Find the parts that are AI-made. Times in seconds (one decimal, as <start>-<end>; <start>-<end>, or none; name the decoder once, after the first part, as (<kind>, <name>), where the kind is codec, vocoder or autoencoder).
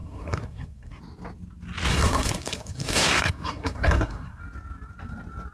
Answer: 0.0-1.0 (codec, SNAC); 1.9-4.4